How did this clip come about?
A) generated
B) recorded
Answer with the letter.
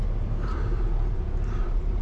A